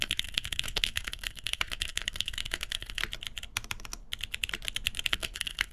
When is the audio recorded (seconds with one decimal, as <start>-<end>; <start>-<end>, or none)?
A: 3.0-5.1